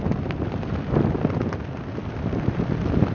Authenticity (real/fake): fake